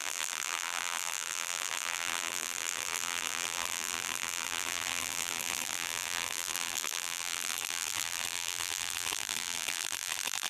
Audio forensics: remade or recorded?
remade